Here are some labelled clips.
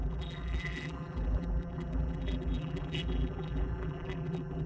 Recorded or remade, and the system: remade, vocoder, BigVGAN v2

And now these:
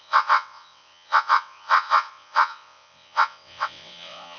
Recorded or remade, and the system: remade, vocoder, WaveNeXt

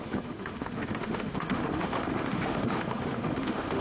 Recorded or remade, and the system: remade, autoencoder, DAC-VAE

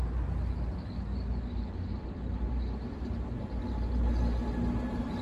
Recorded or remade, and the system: recorded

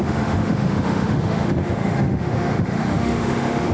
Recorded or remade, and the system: remade, autoencoder, DAC-VAE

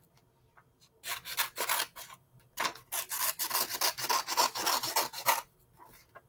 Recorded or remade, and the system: recorded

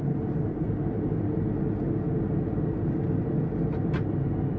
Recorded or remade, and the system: recorded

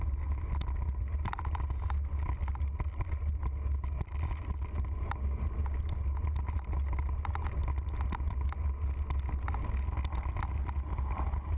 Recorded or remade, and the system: recorded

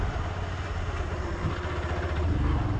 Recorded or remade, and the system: recorded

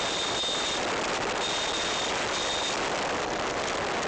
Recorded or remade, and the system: recorded